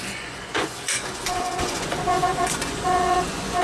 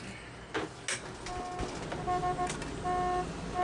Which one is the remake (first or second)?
first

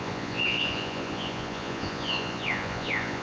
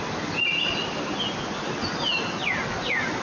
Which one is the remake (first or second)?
first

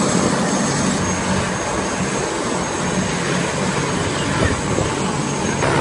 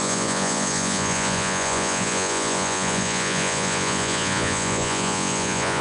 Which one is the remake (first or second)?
second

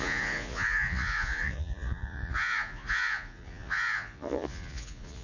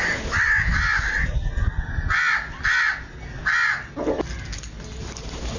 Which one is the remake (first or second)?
first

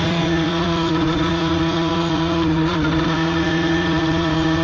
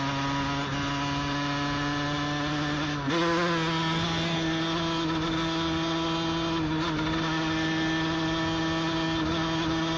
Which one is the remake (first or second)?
first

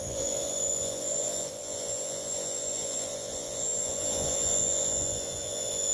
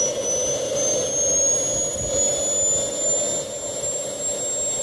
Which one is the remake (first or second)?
first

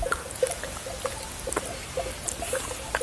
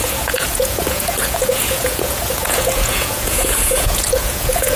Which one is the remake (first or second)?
second